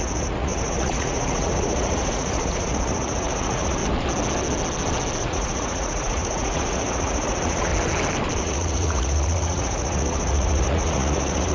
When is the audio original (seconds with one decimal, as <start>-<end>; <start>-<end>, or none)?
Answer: 3.8-5.2; 7.7-8.4